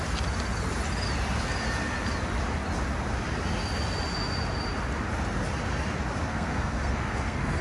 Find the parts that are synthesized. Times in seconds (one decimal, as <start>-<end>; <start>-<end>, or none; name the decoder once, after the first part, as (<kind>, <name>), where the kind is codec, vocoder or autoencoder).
6.3-7.6 (codec, SNAC)